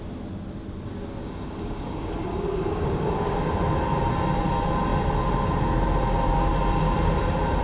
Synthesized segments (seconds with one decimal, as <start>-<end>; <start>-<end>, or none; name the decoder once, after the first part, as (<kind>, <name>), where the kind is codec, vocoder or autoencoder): 1.2-3.5 (codec, DAC)